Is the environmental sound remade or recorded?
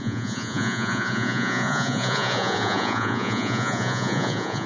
remade